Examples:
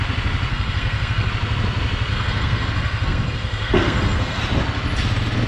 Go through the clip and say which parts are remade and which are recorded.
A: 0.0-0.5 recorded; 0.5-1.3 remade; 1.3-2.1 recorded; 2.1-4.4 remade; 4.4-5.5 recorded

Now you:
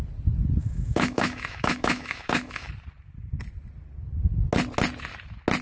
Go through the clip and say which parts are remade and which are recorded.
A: 0.0-0.6 recorded; 0.6-2.7 remade; 2.7-5.6 recorded

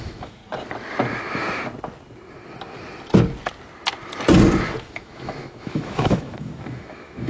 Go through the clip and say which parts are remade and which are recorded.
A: 0.0-0.4 remade; 0.4-4.8 recorded; 4.8-7.3 remade

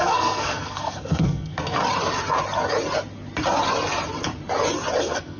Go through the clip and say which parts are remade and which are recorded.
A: 0.0-1.8 remade; 1.8-5.0 recorded; 5.0-5.4 remade

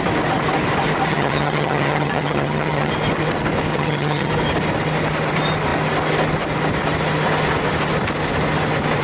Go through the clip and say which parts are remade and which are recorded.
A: 0.0-1.1 recorded; 1.1-2.9 remade; 2.9-3.7 recorded; 3.7-4.3 remade; 4.3-9.0 recorded

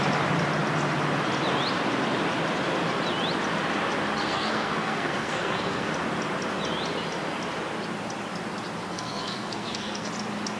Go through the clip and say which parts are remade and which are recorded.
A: 0.0-4.2 recorded; 4.2-5.9 remade; 5.9-8.9 recorded; 8.9-10.1 remade; 10.1-10.6 recorded

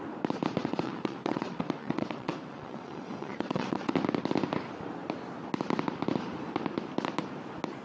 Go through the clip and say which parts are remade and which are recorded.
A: 0.0-0.6 recorded; 0.6-3.9 remade; 3.9-7.8 recorded

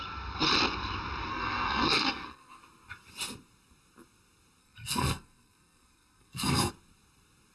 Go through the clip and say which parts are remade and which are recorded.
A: 0.0-1.3 recorded; 1.3-2.6 remade; 2.6-4.6 recorded; 4.6-6.7 remade; 6.7-7.5 recorded